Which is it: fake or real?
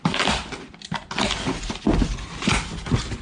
real